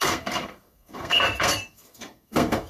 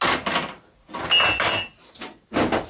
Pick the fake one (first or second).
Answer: first